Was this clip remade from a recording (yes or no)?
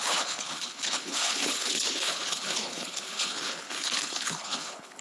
yes